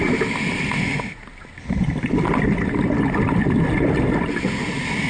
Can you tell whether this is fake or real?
real